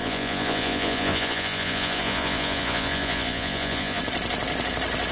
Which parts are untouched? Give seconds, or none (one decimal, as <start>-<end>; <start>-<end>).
4.0-5.1